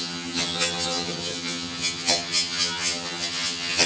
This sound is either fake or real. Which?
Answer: fake